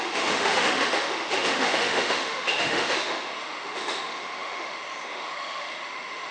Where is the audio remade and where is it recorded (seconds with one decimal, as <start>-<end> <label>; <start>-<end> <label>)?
0.0-6.3 remade

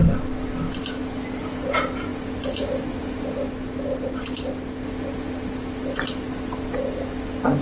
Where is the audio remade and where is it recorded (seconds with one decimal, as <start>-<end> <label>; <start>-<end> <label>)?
0.0-7.6 recorded

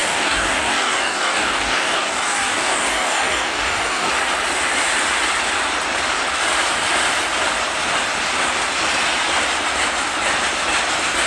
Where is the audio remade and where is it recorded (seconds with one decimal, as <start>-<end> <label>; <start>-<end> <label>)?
0.0-4.1 remade; 4.1-11.3 recorded